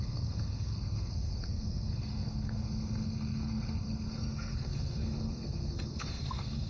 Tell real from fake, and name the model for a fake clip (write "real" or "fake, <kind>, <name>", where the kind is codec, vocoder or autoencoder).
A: fake, codec, SNAC